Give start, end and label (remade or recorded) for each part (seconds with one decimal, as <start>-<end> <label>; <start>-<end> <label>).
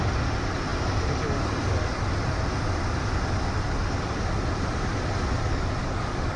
0.0-5.8 recorded; 5.8-6.4 remade